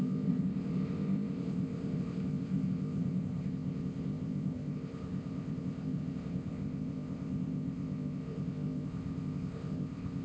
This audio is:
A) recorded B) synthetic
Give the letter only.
B